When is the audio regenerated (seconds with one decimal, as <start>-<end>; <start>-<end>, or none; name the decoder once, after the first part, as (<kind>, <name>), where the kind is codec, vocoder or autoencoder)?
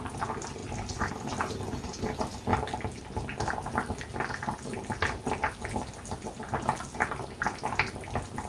none